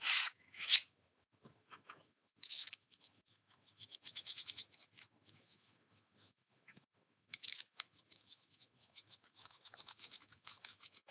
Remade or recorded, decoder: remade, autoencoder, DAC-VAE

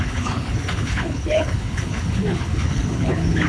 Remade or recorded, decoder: remade, codec, HILCodec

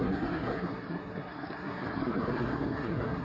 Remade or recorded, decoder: remade, codec, SNAC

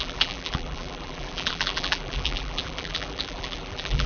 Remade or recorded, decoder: remade, vocoder, BigVGAN v2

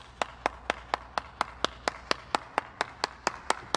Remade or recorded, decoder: recorded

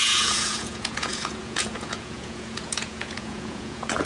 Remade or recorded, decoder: remade, vocoder, Vocos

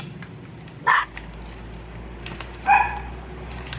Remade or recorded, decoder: recorded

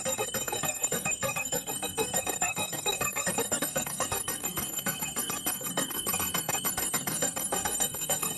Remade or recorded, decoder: remade, codec, SNAC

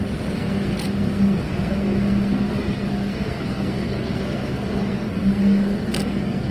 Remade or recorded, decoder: remade, codec, SNAC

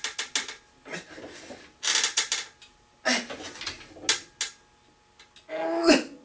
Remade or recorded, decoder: recorded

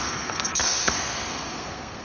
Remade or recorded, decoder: remade, codec, SNAC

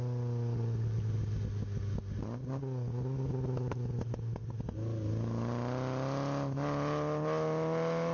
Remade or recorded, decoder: recorded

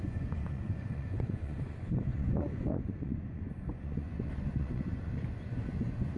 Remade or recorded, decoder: remade, vocoder, Vocos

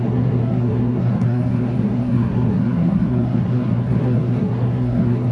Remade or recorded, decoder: remade, codec, SNAC